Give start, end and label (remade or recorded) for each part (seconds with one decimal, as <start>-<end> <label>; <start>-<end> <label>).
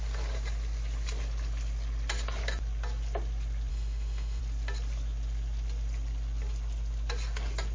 0.0-3.7 recorded; 3.7-4.4 remade; 4.4-7.7 recorded